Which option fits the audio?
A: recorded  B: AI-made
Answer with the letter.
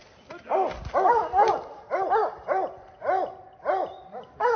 A